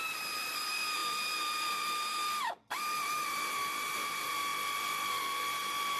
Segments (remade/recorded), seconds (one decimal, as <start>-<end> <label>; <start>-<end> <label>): 0.0-4.5 remade; 4.5-5.1 recorded; 5.1-6.0 remade